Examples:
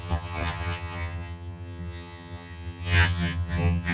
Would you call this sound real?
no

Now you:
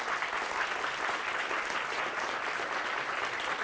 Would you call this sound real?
no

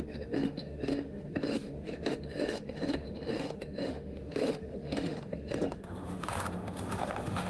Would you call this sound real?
no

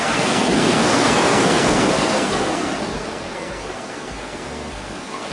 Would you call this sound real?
no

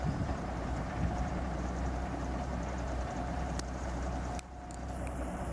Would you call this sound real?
no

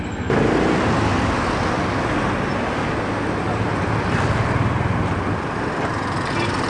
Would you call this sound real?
yes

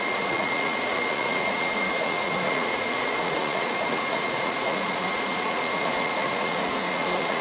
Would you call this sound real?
no